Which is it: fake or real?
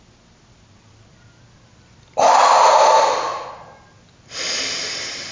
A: real